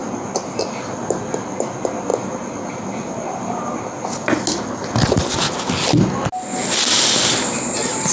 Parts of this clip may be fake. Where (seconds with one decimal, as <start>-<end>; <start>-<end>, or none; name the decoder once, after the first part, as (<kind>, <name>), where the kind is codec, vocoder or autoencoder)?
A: none